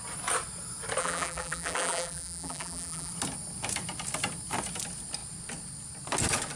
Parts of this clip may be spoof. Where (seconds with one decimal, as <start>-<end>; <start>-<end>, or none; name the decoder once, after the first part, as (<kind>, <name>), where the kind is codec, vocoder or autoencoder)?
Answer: 1.0-3.1 (vocoder, BigVGAN v2)